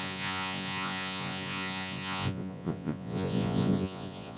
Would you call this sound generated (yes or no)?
yes